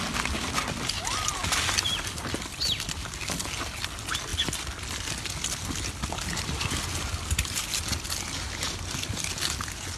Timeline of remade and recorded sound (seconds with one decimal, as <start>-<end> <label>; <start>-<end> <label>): 0.0-10.0 recorded